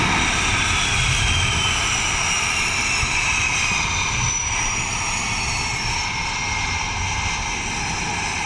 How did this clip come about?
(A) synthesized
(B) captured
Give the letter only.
B